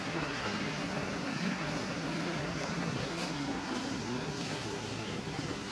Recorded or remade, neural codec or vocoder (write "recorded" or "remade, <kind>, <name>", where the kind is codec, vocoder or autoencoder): remade, codec, SNAC